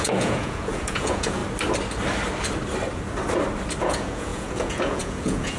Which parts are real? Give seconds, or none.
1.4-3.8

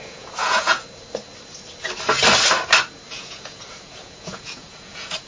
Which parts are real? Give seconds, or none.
0.8-3.1

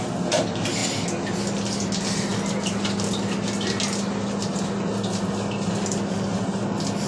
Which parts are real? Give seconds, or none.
0.0-7.1

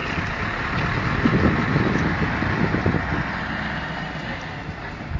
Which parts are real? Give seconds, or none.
0.0-5.2

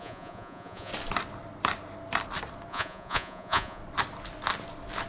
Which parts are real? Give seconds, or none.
0.9-2.7; 3.8-5.1

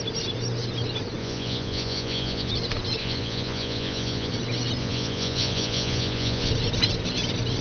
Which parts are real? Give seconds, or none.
0.0-1.2; 2.5-3.0; 4.3-4.8; 6.5-7.6

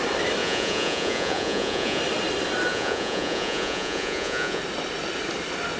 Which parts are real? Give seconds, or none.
0.0-0.4; 2.0-2.7; 4.6-5.8

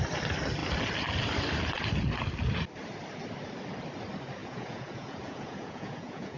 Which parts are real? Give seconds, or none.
0.0-4.4